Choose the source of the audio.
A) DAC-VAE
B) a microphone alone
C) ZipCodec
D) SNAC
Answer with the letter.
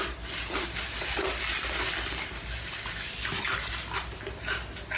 B